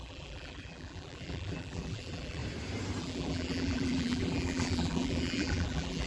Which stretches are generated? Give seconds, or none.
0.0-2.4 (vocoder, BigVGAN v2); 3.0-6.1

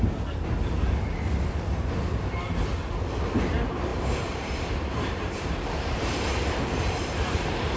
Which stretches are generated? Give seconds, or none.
3.9-7.8 (vocoder, BigVGAN v2)

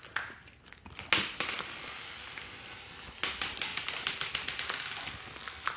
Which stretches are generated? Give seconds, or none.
none

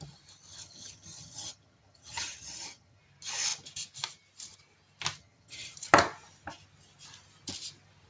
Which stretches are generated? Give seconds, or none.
0.5-3.0 (vocoder, HiFi-GAN); 5.2-5.7

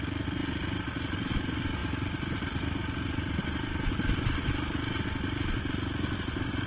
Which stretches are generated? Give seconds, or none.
none